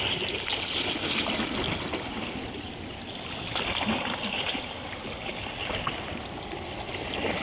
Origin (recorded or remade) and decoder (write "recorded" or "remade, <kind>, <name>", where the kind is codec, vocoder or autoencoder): recorded